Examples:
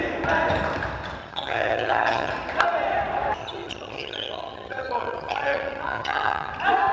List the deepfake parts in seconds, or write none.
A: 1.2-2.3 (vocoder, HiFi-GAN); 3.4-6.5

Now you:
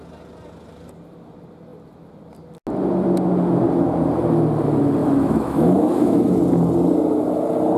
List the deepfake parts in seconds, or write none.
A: 5.0-6.4 (autoencoder, DAC-VAE)

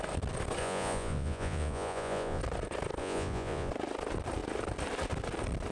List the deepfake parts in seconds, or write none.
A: 0.6-2.4 (vocoder, Vocos); 3.0-3.7

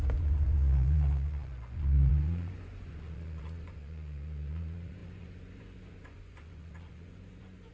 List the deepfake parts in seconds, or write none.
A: 0.0-7.7 (vocoder, Vocos)

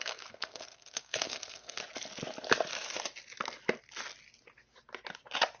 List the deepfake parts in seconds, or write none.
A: 0.0-1.8 (codec, SNAC)